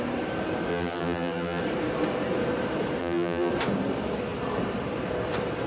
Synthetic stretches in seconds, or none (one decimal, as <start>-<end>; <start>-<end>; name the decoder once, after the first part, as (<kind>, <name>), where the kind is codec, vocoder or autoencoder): 0.7-1.6 (vocoder, BigVGAN v2); 3.0-3.5